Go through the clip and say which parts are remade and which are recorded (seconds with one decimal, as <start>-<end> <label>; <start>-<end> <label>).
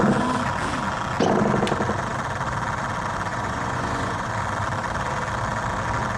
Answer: 0.0-3.3 recorded; 3.3-4.3 remade; 4.3-6.2 recorded